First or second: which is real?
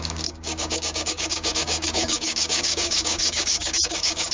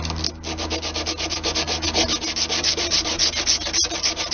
second